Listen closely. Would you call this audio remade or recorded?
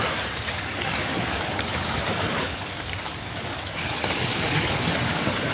remade